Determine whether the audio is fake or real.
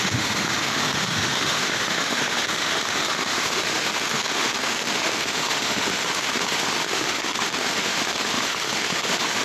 fake